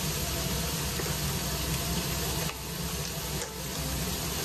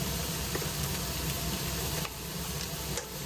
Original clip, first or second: first